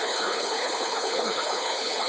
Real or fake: fake